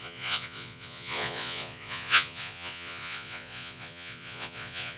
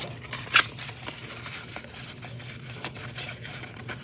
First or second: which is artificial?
first